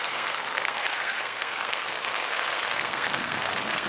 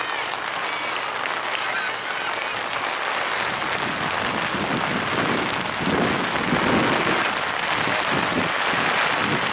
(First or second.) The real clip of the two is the second